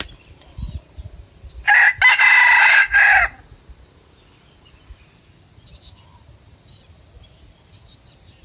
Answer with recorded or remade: recorded